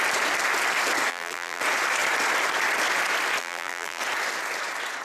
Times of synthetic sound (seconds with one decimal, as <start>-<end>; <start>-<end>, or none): 1.1-1.6; 3.4-4.0